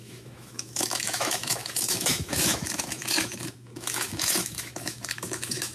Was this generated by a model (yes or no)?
yes